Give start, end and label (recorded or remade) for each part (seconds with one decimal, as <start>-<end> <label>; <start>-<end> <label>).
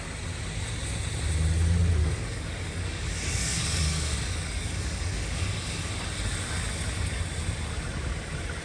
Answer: 0.0-2.0 recorded; 2.0-5.9 remade; 5.9-8.6 recorded